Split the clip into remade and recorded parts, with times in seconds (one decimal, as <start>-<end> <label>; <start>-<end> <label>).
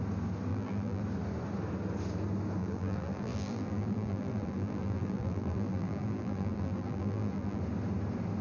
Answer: 0.0-0.5 recorded; 0.5-1.0 remade; 1.0-2.6 recorded; 2.6-7.6 remade; 7.6-8.4 recorded